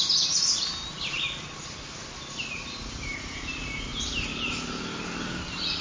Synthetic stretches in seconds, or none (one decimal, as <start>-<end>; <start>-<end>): 0.0-0.7; 2.6-3.9